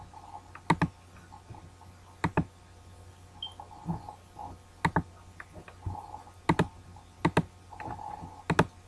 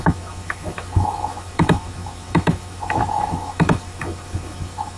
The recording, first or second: first